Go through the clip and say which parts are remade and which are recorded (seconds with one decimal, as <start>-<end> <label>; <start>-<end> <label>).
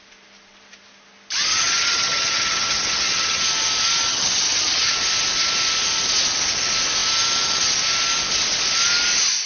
0.0-1.5 recorded; 1.5-3.4 remade; 3.4-4.1 recorded; 4.1-4.9 remade; 4.9-9.5 recorded